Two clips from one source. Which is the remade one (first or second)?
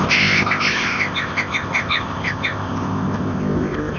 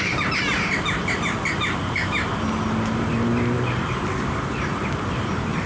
first